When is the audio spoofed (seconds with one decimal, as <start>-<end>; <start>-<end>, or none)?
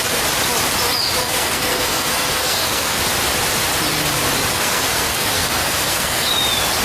1.2-3.0; 4.5-6.3